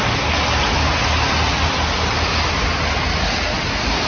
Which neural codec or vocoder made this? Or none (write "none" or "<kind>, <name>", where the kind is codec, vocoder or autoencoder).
none